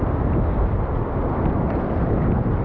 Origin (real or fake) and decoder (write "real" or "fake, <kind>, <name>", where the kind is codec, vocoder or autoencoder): real